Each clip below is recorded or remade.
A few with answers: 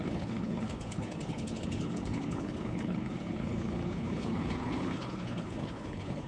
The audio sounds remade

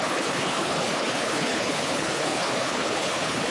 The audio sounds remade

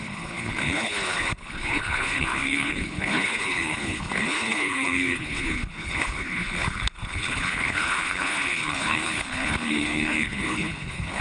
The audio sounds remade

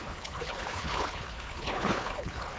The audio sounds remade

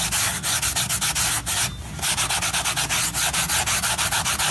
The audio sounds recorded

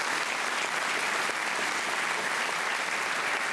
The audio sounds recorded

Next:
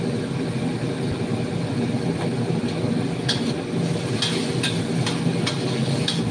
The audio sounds recorded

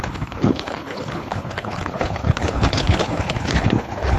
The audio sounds remade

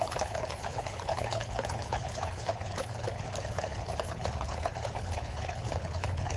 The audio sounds remade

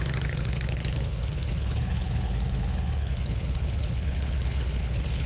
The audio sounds remade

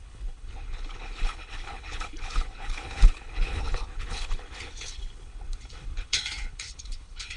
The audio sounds remade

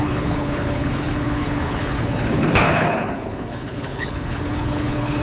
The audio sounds remade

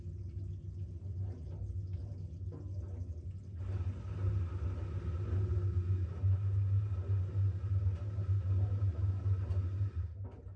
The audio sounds recorded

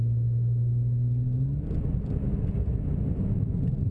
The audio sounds recorded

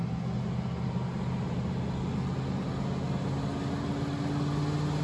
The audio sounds recorded